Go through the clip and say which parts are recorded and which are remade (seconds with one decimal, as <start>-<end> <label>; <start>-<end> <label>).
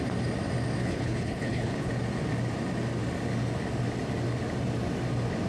0.0-0.8 recorded; 0.8-1.9 remade; 1.9-5.5 recorded